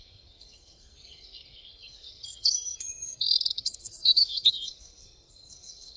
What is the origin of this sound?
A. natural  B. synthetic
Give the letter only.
B